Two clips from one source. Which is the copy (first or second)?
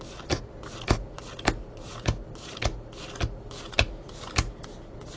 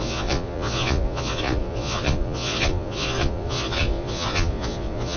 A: second